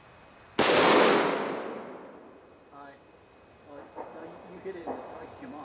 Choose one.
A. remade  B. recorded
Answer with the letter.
B